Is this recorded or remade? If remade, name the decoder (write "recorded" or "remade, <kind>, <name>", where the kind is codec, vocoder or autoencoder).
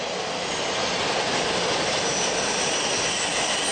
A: recorded